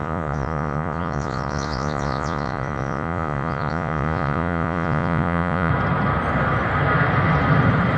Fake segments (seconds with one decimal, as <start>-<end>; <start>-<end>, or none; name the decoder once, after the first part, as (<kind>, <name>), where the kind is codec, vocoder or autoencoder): 0.0-5.7 (vocoder, Vocos)